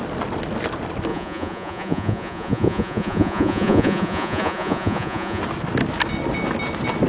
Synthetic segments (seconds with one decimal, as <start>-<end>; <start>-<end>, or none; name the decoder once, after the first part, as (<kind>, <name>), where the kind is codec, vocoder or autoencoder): 1.1-5.4 (vocoder, Vocos)